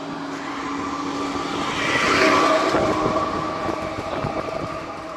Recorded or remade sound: recorded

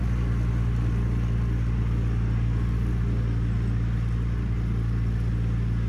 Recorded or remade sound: recorded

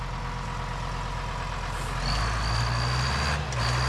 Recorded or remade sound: recorded